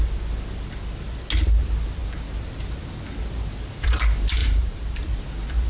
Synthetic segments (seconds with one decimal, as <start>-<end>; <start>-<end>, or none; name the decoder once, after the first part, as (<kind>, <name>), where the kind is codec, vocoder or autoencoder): 4.4-5.1 (vocoder, BigVGAN v2)